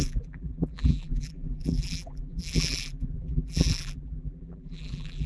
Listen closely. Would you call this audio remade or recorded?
remade